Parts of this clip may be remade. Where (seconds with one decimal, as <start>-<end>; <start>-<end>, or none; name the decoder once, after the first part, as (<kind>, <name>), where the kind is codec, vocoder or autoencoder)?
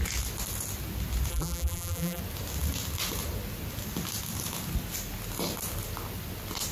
1.3-2.2 (vocoder, BigVGAN v2)